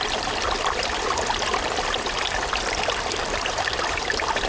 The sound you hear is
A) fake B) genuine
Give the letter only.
A